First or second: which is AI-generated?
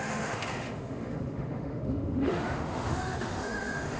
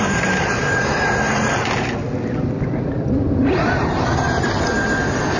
first